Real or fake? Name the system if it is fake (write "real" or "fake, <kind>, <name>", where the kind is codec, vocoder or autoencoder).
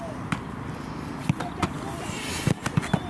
real